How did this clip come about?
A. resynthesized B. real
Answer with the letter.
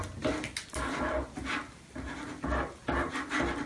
B